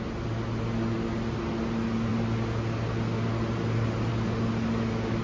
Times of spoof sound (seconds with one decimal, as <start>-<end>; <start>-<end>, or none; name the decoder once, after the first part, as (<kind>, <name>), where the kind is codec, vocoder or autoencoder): none